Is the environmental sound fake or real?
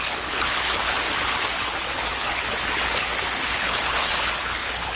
fake